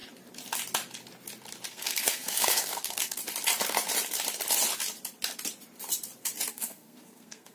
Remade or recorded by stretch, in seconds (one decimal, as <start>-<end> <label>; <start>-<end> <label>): 0.0-1.7 recorded; 1.7-3.2 remade; 3.2-6.5 recorded; 6.5-7.5 remade